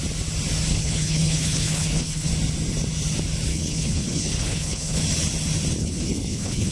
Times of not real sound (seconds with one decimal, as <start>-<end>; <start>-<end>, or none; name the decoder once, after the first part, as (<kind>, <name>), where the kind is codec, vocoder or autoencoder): 0.7-2.3 (codec, HILCodec); 3.5-5.0; 5.8-6.7